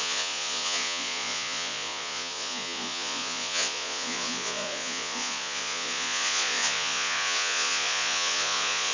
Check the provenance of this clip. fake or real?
fake